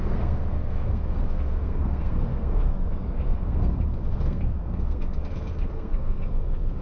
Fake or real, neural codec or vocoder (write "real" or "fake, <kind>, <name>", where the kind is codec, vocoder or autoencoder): fake, codec, SNAC